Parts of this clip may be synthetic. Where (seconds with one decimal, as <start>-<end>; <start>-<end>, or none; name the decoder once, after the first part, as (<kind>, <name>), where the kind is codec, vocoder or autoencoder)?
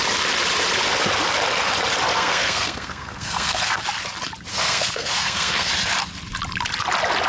2.1-3.8 (codec, SNAC); 4.5-5.7